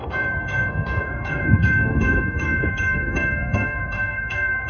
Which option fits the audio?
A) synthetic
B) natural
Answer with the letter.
A